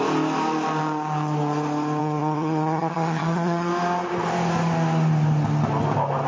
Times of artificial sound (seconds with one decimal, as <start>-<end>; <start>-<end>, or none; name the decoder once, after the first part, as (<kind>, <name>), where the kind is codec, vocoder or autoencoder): 2.0-3.7 (vocoder, HiFi-GAN)